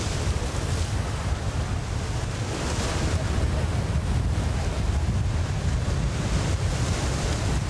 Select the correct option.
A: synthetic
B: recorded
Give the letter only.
B